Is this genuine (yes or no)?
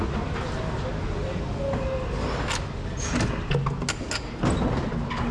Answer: yes